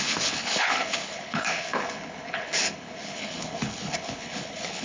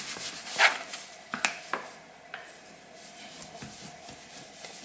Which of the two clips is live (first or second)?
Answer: second